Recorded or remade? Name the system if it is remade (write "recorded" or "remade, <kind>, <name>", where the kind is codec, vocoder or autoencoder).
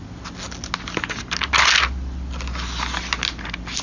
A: recorded